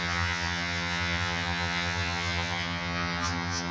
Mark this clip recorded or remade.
remade